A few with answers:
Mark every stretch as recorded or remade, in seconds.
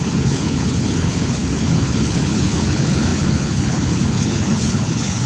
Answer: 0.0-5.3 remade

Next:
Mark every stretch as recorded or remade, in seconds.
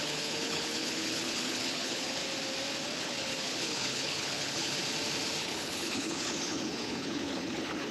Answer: 0.0-2.2 remade; 2.2-3.0 recorded; 3.0-4.8 remade; 4.8-5.4 recorded; 5.4-7.9 remade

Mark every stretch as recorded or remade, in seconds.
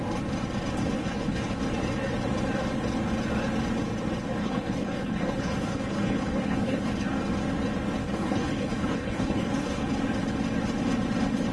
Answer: 0.0-0.8 recorded; 0.8-1.6 remade; 1.6-4.4 recorded; 4.4-6.9 remade; 6.9-8.0 recorded; 8.0-9.9 remade; 9.9-11.5 recorded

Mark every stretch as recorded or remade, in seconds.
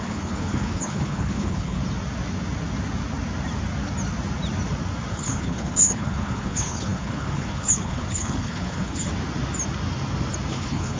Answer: 0.0-1.8 remade; 1.8-5.1 recorded; 5.1-9.1 remade; 9.1-10.5 recorded; 10.5-11.0 remade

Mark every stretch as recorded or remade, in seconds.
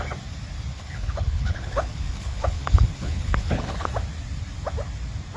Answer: 0.0-0.7 recorded; 0.7-3.9 remade; 3.9-5.4 recorded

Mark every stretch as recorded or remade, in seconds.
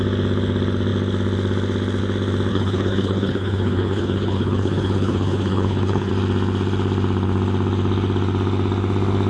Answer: 0.0-2.5 recorded; 2.5-6.1 remade; 6.1-9.3 recorded